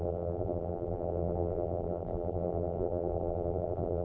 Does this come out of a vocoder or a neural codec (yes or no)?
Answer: yes